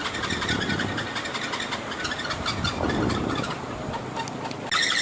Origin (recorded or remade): recorded